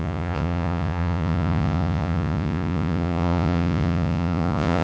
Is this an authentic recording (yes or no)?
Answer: no